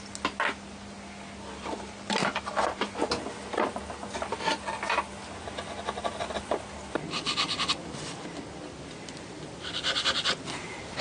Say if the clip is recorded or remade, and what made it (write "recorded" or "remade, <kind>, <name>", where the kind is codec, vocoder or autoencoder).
recorded